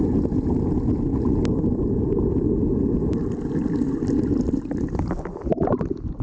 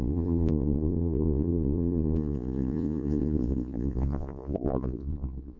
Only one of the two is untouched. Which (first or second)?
first